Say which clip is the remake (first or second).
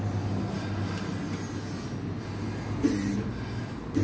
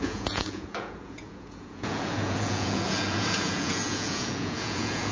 second